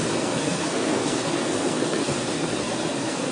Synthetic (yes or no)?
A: yes